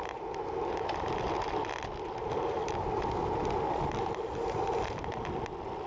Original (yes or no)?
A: yes